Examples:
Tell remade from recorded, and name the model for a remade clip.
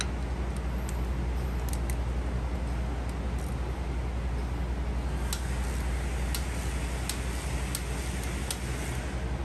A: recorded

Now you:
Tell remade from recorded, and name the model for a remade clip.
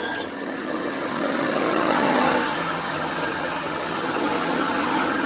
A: remade, vocoder, HiFi-GAN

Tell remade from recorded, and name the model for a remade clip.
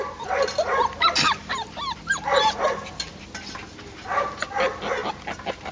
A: recorded